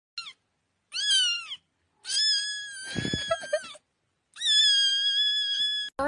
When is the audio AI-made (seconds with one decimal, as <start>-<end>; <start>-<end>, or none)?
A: none